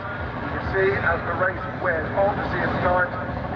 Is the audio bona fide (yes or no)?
yes